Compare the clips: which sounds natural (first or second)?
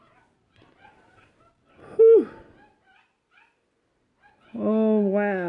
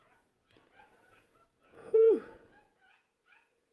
first